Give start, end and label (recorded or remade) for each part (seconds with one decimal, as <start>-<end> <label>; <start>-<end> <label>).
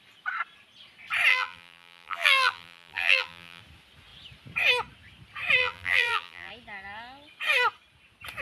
0.0-1.3 recorded; 1.3-3.6 remade; 3.6-5.6 recorded; 5.6-6.5 remade; 6.5-8.4 recorded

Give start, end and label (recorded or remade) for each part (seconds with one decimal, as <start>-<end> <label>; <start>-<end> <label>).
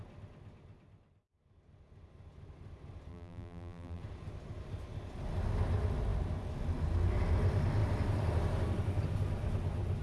0.0-3.1 recorded; 3.1-4.0 remade; 4.0-10.0 recorded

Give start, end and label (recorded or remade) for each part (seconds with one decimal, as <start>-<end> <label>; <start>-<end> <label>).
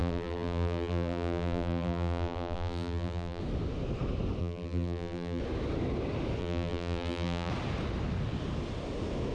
0.0-3.4 remade; 3.4-4.4 recorded; 4.4-5.4 remade; 5.4-6.4 recorded; 6.4-7.5 remade; 7.5-9.3 recorded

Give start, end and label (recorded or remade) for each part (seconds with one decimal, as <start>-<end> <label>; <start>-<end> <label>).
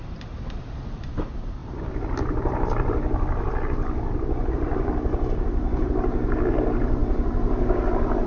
0.0-8.3 remade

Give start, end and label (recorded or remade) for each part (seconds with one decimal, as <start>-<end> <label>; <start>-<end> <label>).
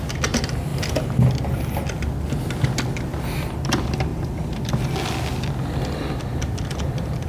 0.0-4.1 recorded; 4.1-4.7 remade; 4.7-6.3 recorded; 6.3-7.3 remade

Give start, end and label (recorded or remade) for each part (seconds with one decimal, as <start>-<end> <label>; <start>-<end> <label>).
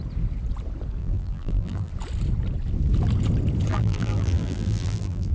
0.0-1.0 recorded; 1.0-1.9 remade; 1.9-3.7 recorded; 3.7-5.3 remade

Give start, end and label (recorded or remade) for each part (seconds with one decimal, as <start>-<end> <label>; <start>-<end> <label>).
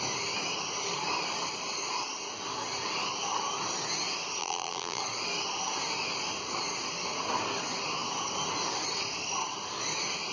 0.0-4.4 recorded; 4.4-5.0 remade; 5.0-10.3 recorded